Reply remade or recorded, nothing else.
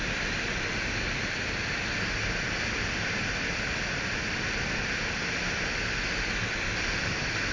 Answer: recorded